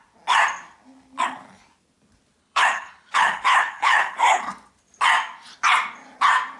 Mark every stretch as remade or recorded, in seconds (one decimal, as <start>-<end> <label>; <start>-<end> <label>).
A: 0.0-2.4 recorded; 2.4-4.4 remade; 4.4-6.6 recorded

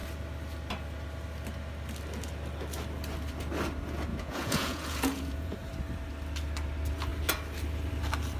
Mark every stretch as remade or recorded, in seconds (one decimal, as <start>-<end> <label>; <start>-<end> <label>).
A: 0.0-4.1 recorded; 4.1-5.7 remade; 5.7-8.4 recorded

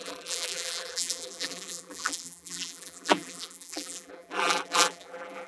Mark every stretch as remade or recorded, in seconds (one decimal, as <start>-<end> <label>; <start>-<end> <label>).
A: 0.0-5.5 remade

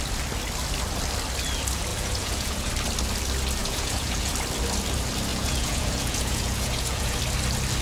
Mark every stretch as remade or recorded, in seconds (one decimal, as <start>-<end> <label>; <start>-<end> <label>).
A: 0.0-1.9 recorded; 1.9-2.7 remade; 2.7-3.6 recorded; 3.6-4.3 remade; 4.3-5.3 recorded; 5.3-7.2 remade; 7.2-7.8 recorded

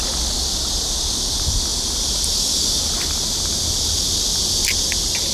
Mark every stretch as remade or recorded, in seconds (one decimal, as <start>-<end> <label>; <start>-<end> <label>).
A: 0.0-5.3 recorded